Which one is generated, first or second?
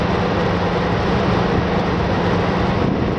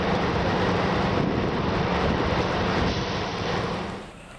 second